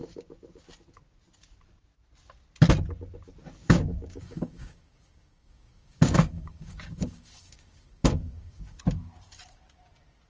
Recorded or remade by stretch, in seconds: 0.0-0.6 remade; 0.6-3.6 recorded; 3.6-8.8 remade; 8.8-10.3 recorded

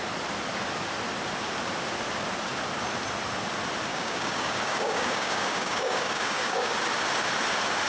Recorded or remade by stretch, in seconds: 0.0-3.9 recorded; 3.9-6.7 remade; 6.7-7.9 recorded